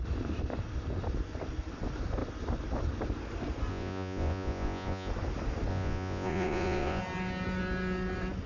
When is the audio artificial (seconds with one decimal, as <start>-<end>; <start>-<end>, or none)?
3.7-5.1; 5.7-7.0